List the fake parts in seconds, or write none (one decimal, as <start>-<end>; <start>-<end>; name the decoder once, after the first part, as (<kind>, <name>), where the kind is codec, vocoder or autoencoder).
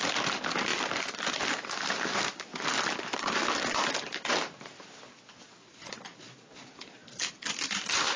none